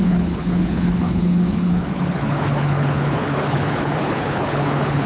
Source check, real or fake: fake